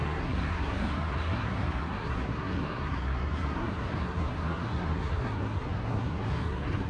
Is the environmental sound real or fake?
fake